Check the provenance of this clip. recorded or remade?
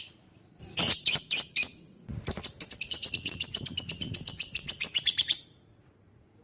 remade